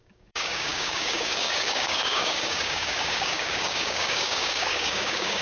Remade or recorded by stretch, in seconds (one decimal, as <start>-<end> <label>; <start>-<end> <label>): 0.0-5.4 remade